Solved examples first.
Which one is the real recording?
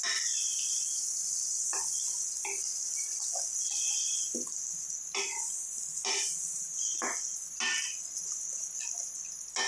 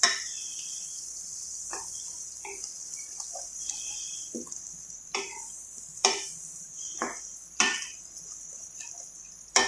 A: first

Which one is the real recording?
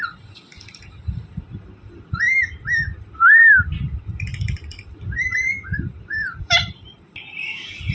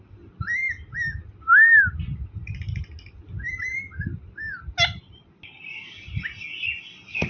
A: second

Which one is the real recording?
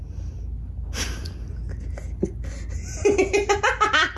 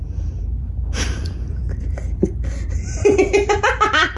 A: first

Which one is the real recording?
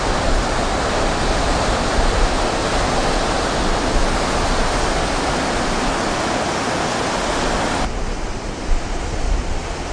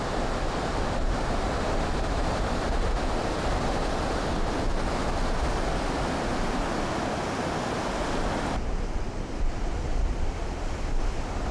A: first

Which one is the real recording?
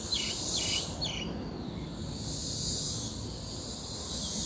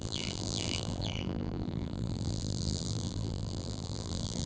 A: first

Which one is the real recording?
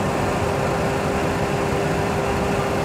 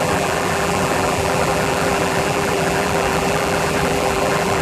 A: first